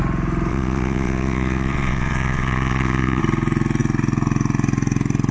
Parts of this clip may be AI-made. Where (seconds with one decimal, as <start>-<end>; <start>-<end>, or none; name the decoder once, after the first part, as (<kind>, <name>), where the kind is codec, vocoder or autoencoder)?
0.5-3.2 (vocoder, WaveNeXt)